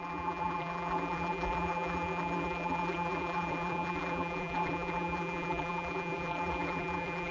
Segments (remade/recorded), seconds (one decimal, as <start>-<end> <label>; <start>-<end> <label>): 0.0-7.3 remade